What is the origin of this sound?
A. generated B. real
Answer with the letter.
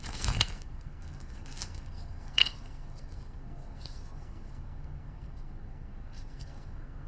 A